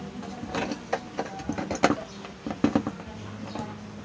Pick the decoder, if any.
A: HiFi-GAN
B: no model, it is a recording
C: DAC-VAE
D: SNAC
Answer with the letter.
B